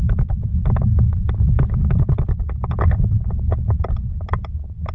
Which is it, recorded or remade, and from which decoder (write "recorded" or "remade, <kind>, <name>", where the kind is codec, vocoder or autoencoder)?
recorded